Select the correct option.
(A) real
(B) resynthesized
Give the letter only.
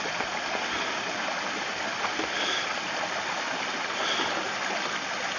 A